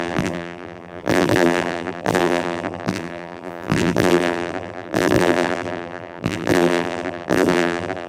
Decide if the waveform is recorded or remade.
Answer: remade